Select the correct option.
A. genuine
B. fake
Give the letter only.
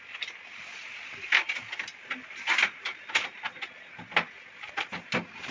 A